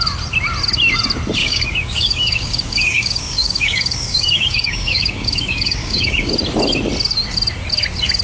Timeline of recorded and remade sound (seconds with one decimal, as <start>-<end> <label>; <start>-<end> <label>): 0.0-1.4 recorded; 1.4-6.3 remade; 6.3-8.2 recorded